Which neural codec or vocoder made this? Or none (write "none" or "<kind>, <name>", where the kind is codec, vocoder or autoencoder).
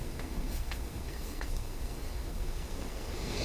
codec, SNAC